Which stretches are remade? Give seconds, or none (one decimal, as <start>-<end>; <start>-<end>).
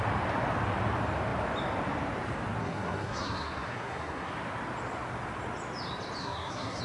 2.6-4.3; 6.2-6.8